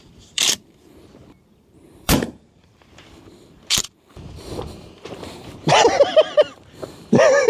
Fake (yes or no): yes